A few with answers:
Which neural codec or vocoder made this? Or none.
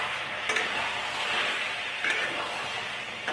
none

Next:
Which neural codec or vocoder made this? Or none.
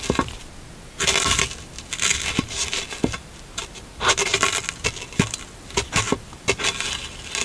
none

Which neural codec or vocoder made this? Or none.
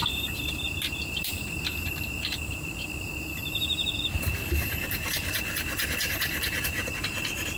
vocoder, BigVGAN v2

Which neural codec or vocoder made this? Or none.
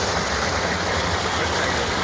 none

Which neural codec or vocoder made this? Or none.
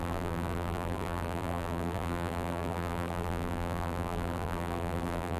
vocoder, BigVGAN v2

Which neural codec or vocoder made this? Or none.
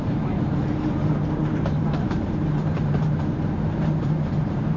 vocoder, BigVGAN v2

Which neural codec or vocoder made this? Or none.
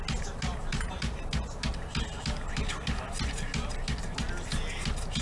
none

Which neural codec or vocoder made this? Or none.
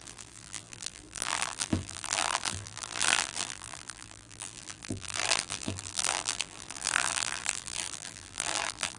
vocoder, BigVGAN v2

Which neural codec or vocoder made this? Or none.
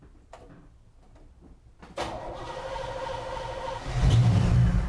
none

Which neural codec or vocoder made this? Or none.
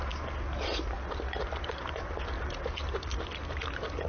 none